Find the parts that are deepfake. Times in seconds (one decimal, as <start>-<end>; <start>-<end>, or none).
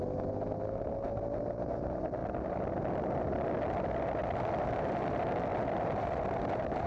5.5-6.4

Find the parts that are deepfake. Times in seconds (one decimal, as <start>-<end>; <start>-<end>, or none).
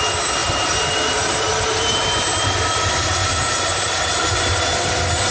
0.4-3.5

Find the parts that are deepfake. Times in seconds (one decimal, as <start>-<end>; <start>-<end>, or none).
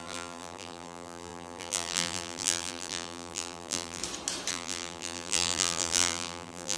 0.0-4.0; 4.5-6.8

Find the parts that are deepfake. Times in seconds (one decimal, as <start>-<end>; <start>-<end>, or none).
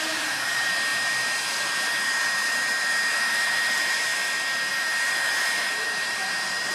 0.0-4.1; 4.7-6.7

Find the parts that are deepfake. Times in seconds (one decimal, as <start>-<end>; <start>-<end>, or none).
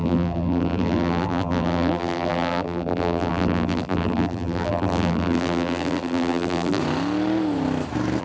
0.0-6.8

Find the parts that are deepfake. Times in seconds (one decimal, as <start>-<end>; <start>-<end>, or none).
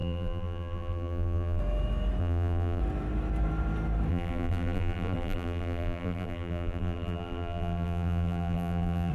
0.0-1.6; 2.2-2.8; 4.1-9.1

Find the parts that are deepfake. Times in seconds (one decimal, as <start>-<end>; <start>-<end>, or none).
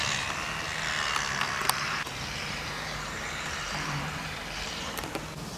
1.6-5.0